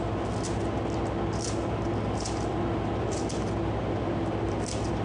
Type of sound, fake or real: real